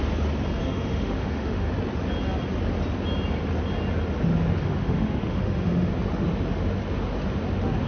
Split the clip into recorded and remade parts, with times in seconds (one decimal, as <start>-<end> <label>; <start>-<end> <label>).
0.0-0.6 recorded; 0.6-1.7 remade; 1.7-4.6 recorded; 4.6-5.9 remade; 5.9-7.9 recorded